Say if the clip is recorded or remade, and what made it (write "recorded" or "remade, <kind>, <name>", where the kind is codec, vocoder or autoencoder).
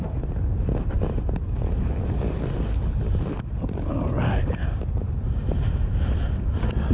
recorded